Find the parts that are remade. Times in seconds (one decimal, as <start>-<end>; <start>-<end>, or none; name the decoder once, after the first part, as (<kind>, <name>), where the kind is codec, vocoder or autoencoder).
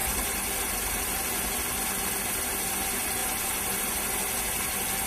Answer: none